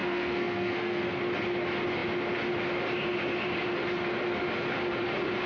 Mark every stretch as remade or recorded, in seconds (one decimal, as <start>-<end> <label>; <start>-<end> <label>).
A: 0.0-1.2 remade; 1.2-5.5 recorded